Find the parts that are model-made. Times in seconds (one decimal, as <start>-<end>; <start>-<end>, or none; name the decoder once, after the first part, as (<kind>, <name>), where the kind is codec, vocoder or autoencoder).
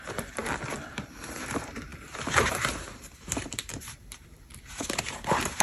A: 0.0-0.4 (vocoder, BigVGAN v2); 0.9-5.6